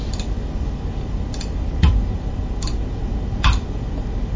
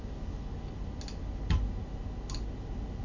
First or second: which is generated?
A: first